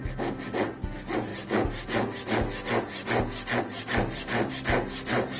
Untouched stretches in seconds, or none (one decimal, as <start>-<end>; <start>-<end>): 0.0-5.4